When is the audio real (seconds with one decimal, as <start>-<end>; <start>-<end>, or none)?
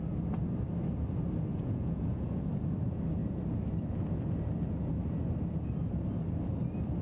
0.0-1.5; 2.4-7.0